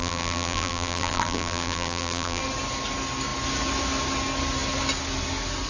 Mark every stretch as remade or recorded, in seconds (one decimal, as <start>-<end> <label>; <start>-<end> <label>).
0.0-2.4 remade; 2.4-5.7 recorded

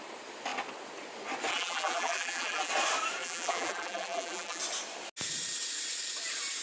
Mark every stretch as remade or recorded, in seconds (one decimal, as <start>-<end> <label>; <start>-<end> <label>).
0.0-1.5 recorded; 1.5-2.7 remade; 2.7-3.2 recorded; 3.2-4.6 remade; 4.6-6.6 recorded

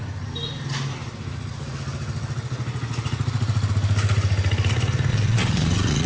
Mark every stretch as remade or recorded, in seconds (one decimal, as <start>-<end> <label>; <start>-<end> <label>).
0.0-5.1 recorded; 5.1-6.1 remade

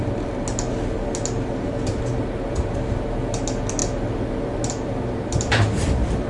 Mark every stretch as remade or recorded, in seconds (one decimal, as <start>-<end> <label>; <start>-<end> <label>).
0.0-6.3 recorded

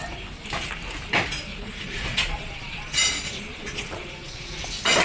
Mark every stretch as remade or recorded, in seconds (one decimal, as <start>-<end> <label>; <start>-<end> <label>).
0.0-1.5 recorded; 1.5-4.5 remade; 4.5-5.0 recorded

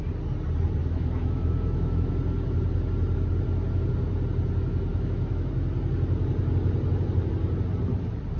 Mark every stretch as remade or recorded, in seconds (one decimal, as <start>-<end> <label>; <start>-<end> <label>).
0.0-0.8 recorded; 0.8-2.1 remade; 2.1-4.9 recorded; 4.9-5.5 remade; 5.5-8.4 recorded

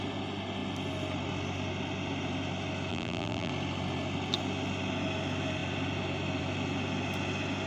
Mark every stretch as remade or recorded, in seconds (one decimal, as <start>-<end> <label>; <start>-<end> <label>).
0.0-2.9 recorded; 2.9-3.5 remade; 3.5-7.7 recorded